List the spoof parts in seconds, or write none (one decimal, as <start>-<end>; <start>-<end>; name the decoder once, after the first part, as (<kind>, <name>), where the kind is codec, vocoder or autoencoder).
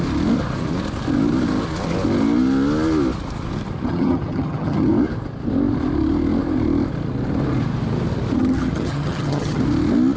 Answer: 3.9-4.9 (vocoder, HiFi-GAN); 8.4-9.6